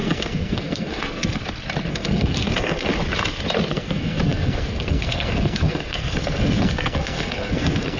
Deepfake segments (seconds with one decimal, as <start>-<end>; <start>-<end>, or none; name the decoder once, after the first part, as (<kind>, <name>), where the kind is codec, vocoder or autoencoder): 0.0-1.4 (codec, SNAC); 1.9-2.9; 3.7-8.0